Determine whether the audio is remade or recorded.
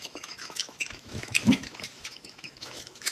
remade